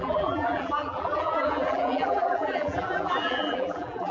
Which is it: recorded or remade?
remade